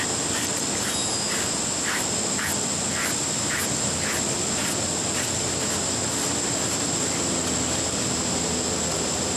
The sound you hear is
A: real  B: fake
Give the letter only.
A